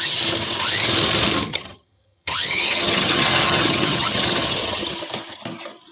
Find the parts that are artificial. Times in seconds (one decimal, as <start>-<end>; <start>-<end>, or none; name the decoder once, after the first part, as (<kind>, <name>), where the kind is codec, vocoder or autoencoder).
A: 1.5-5.0 (vocoder, HiFi-GAN)